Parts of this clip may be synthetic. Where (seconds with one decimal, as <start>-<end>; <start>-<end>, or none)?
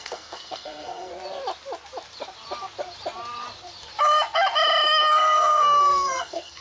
0.0-1.1; 5.1-6.6